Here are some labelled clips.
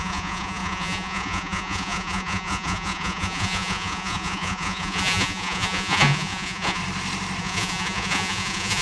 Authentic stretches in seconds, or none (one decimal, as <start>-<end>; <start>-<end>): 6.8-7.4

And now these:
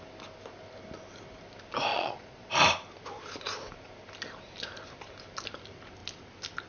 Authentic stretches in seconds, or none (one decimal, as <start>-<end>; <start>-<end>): 0.0-1.9; 2.5-6.7

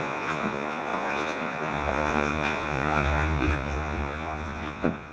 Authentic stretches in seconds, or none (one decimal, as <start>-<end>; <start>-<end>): none

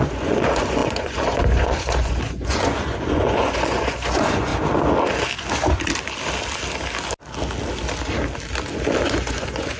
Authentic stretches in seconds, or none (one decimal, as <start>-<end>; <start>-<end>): 4.5-9.0

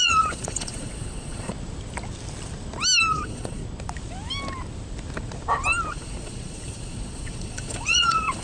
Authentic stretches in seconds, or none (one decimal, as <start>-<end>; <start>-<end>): 1.5-3.1; 3.6-5.9

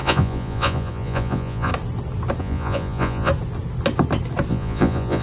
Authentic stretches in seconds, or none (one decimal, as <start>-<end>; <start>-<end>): 1.7-2.4; 3.3-4.5

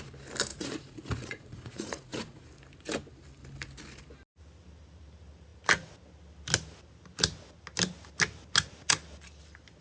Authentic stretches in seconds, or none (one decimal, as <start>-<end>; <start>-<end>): 0.0-0.5; 2.5-9.8

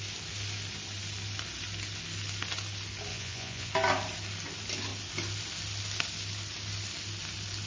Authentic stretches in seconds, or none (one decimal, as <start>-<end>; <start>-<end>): 0.0-3.1; 3.7-7.7